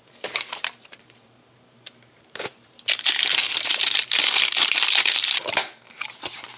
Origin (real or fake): fake